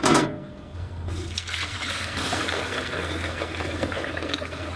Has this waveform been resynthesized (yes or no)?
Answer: yes